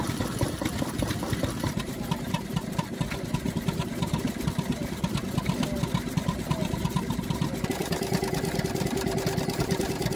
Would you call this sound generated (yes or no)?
no